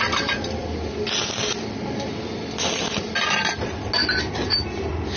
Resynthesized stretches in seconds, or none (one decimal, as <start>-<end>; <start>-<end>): none